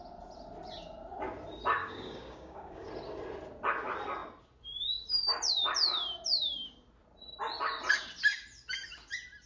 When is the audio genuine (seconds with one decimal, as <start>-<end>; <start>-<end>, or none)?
0.0-1.8; 2.9-9.5